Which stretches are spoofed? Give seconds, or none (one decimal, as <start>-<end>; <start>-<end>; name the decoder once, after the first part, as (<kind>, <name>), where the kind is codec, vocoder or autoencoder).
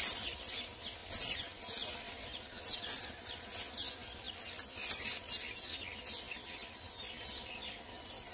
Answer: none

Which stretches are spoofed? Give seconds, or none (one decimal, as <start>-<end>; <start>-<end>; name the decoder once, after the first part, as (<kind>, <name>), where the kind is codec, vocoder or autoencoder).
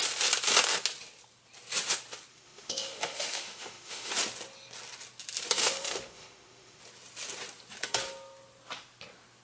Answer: 2.3-4.1 (autoencoder, DAC-VAE); 5.6-6.8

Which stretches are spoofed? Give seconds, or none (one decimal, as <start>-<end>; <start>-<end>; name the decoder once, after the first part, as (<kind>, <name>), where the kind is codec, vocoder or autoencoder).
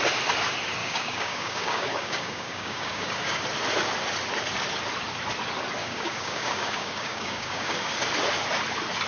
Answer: 0.8-3.4 (codec, DAC); 5.8-7.9